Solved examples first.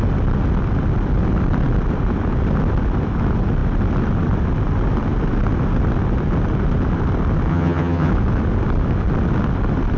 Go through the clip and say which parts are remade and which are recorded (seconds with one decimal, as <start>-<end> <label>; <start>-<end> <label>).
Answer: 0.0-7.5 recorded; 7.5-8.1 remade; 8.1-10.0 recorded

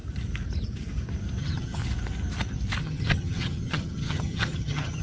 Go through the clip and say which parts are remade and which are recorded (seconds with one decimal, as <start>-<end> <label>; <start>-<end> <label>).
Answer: 0.0-1.4 recorded; 1.4-1.8 remade; 1.8-2.8 recorded; 2.8-5.0 remade

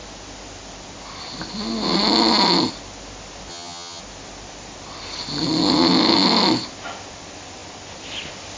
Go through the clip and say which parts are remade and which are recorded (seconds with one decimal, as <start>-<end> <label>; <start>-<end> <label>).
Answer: 0.0-3.5 recorded; 3.5-4.0 remade; 4.0-8.6 recorded

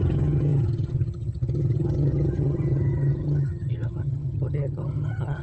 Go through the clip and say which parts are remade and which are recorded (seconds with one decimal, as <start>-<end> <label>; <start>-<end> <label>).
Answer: 0.0-5.4 remade

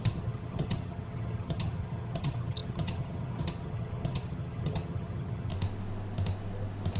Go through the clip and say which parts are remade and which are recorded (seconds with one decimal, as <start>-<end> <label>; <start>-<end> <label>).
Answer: 0.0-5.5 remade; 5.5-7.0 recorded